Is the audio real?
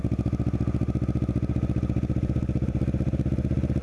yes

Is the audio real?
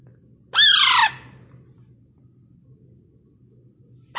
yes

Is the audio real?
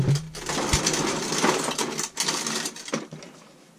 yes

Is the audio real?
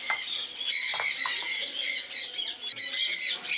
yes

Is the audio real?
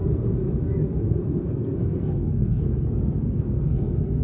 no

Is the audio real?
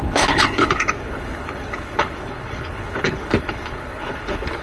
no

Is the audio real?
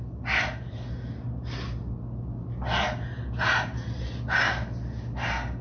yes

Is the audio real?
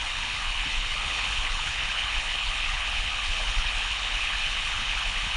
no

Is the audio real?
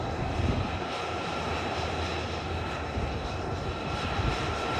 no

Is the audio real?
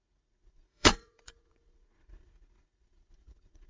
no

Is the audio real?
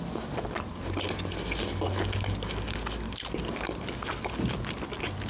yes